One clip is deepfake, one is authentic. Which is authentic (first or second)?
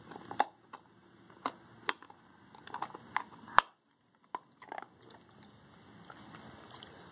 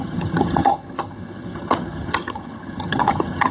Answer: first